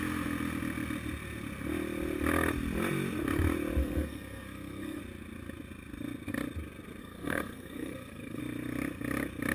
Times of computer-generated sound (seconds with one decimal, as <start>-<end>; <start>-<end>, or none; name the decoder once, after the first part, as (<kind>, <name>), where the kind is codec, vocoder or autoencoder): 3.8-5.0 (codec, SNAC); 7.0-8.4